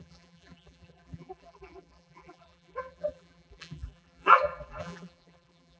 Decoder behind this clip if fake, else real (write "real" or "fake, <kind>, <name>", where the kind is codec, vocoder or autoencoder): fake, vocoder, BigVGAN v2